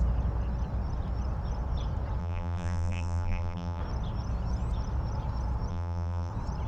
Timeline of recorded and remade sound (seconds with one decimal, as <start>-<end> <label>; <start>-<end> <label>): 0.0-2.2 recorded; 2.2-3.8 remade; 3.8-5.7 recorded; 5.7-6.3 remade; 6.3-6.7 recorded